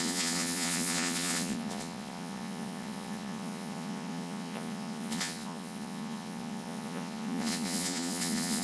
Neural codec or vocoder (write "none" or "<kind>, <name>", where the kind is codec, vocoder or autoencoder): vocoder, Vocos